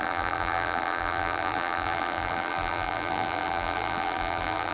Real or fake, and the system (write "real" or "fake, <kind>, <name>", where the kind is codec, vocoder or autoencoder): fake, vocoder, BigVGAN v2